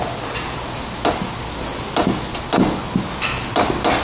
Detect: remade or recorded recorded